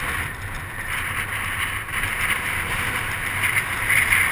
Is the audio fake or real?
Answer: real